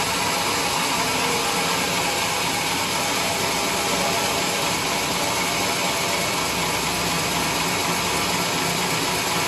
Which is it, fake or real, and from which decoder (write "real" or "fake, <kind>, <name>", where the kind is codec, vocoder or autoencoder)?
real